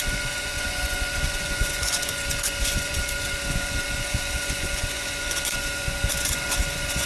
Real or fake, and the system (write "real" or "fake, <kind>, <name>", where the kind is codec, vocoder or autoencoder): fake, vocoder, Vocos